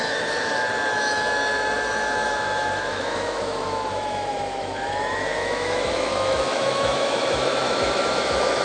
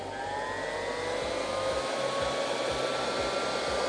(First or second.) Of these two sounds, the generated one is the first